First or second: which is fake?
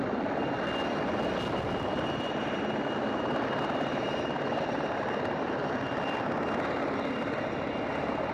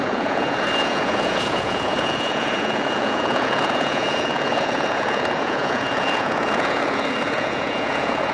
second